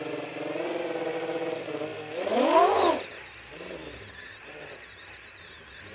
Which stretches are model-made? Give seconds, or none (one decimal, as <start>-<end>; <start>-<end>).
none